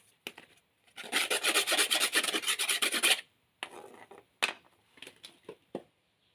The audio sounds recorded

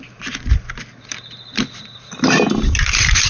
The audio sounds remade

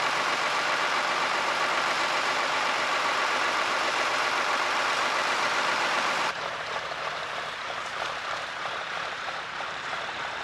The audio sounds remade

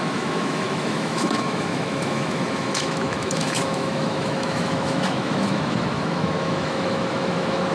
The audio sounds remade